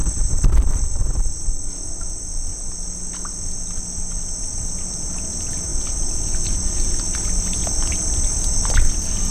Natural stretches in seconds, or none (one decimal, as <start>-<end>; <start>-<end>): 1.7-5.7; 6.2-9.3